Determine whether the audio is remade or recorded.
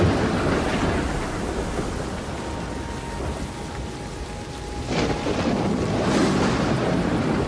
recorded